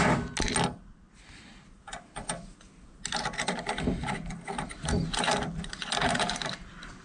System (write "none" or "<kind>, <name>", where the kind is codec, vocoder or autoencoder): none